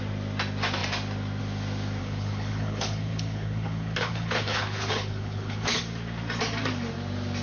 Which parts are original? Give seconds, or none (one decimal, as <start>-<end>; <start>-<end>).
0.0-2.0; 5.8-7.4